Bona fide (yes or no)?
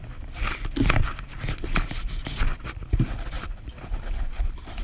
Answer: yes